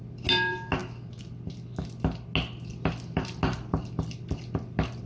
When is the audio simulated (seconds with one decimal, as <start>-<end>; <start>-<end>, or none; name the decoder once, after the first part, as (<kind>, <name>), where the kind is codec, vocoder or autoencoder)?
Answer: none